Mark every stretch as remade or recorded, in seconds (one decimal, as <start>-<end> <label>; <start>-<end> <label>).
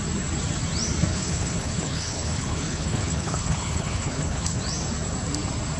0.0-1.1 recorded; 1.1-4.6 remade; 4.6-5.8 recorded